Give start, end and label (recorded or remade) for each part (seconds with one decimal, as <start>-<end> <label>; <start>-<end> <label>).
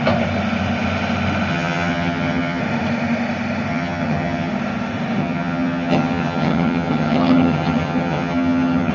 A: 0.0-1.5 recorded; 1.5-2.6 remade; 2.6-3.7 recorded; 3.7-4.5 remade; 4.5-5.2 recorded; 5.2-8.9 remade